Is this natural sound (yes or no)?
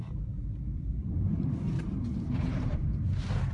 no